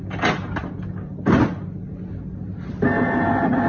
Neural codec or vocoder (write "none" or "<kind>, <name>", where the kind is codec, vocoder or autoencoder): none